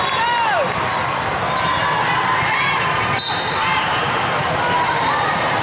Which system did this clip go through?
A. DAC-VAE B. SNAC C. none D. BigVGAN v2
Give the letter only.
D